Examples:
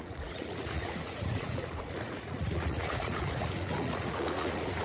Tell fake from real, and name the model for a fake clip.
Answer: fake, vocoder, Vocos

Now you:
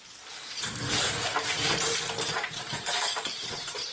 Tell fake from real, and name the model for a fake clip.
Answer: fake, vocoder, BigVGAN v2